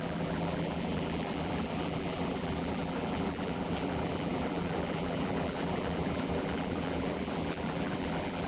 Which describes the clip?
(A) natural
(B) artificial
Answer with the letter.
B